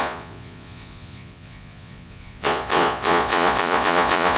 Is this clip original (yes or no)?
no